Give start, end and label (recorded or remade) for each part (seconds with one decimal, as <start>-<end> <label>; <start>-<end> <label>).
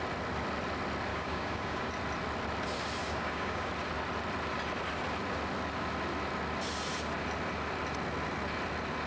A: 0.0-1.1 recorded; 1.1-1.9 remade; 1.9-3.0 recorded; 3.0-3.7 remade; 3.7-9.1 recorded